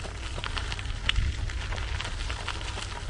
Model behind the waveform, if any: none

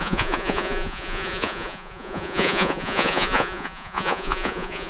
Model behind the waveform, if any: vocoder, Vocos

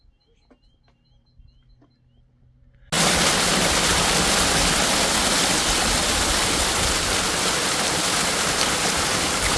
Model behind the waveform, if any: none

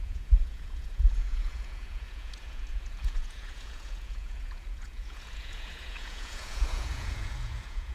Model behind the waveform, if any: vocoder, Vocos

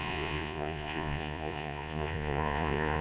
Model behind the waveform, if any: vocoder, Vocos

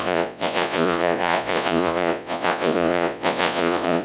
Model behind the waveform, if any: vocoder, Vocos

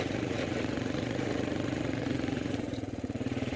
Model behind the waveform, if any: vocoder, Vocos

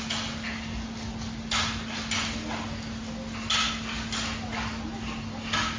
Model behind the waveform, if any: none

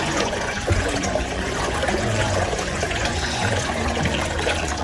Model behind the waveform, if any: vocoder, Vocos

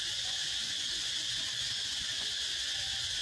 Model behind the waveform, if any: vocoder, Vocos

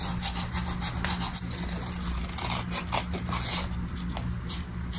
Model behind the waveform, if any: none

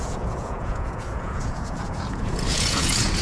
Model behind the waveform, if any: vocoder, Vocos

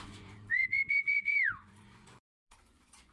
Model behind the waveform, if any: vocoder, Vocos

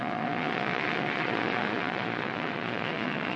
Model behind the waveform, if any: vocoder, Vocos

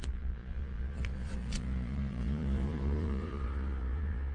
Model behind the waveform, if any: vocoder, Vocos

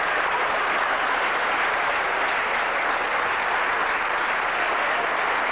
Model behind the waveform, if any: none